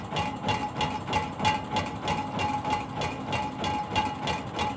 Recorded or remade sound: recorded